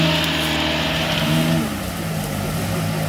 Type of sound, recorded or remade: recorded